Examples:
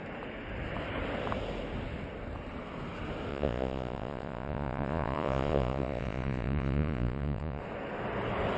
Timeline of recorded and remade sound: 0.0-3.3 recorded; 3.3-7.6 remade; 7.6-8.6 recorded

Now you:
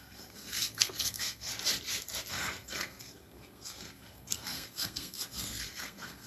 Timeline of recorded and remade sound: 0.0-1.5 remade; 1.5-2.3 recorded; 2.3-6.3 remade

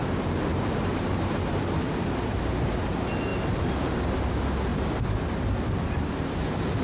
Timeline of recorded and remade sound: 0.0-0.5 recorded; 0.5-2.9 remade; 2.9-3.3 recorded; 3.3-4.3 remade; 4.3-6.8 recorded

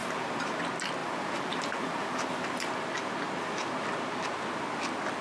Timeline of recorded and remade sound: 0.0-0.6 remade; 0.6-1.0 recorded; 1.0-2.5 remade; 2.5-5.2 recorded

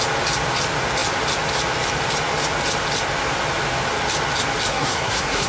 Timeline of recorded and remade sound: 0.0-4.7 recorded; 4.7-5.5 remade

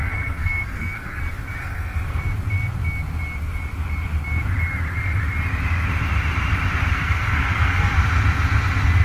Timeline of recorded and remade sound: 0.0-1.2 remade; 1.2-1.6 recorded; 1.6-2.2 remade; 2.2-6.9 recorded; 6.9-7.9 remade; 7.9-9.0 recorded

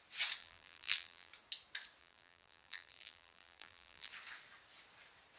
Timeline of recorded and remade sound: 0.0-0.4 recorded; 0.4-1.3 remade; 1.3-2.0 recorded; 2.0-4.1 remade; 4.1-5.4 recorded